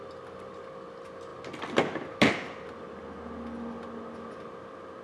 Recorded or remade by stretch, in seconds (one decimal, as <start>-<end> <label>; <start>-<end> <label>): 0.0-5.0 recorded